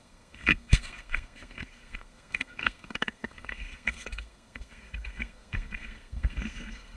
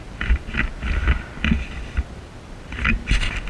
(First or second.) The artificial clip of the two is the first